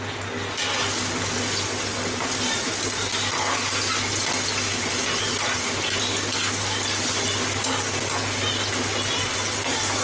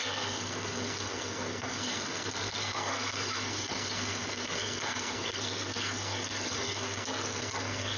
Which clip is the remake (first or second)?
second